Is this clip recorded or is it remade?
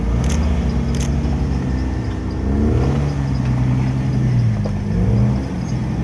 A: recorded